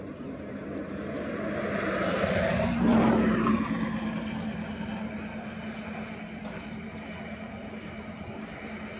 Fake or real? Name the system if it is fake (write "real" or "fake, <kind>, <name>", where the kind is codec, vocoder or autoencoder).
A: real